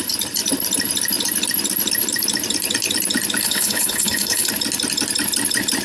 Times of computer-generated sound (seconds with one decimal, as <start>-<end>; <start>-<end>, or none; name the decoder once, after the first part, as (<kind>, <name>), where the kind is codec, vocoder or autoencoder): 3.4-4.5 (codec, HILCodec)